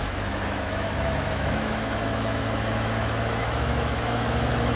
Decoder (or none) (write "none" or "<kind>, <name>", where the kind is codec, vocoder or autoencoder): autoencoder, DAC-VAE